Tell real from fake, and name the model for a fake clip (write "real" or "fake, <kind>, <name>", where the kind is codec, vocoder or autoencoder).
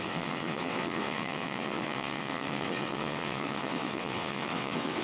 fake, vocoder, WaveNeXt